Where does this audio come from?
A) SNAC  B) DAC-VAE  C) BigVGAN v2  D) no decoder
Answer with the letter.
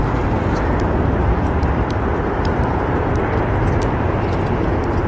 C